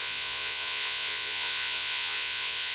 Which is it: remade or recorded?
remade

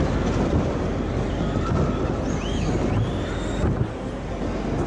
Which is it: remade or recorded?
recorded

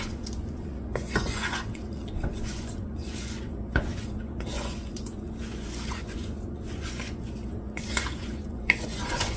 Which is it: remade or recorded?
remade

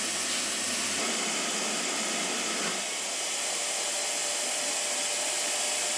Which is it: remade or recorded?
recorded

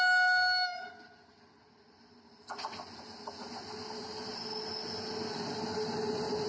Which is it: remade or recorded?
recorded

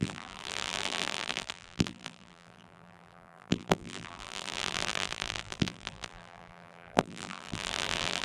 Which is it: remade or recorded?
remade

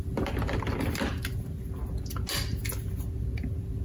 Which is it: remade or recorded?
recorded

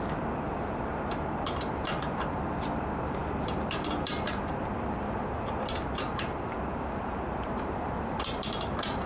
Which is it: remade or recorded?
remade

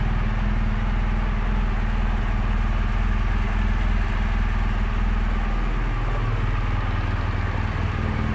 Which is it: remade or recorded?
recorded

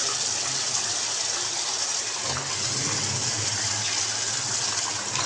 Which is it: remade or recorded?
recorded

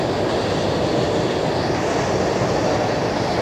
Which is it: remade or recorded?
recorded